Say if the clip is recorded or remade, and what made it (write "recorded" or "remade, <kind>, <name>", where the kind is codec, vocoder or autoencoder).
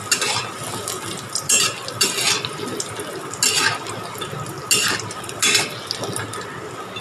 recorded